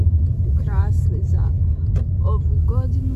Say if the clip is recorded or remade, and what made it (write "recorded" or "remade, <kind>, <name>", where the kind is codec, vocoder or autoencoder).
recorded